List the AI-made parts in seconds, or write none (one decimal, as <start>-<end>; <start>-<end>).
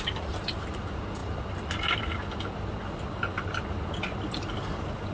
none